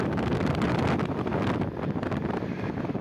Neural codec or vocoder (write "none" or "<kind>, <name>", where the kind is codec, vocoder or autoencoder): vocoder, BigVGAN v2